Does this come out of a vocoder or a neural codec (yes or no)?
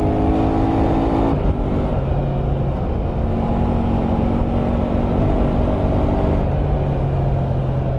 no